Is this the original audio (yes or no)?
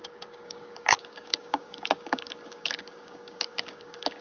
no